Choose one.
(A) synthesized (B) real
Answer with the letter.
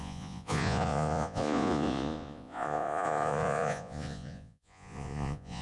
A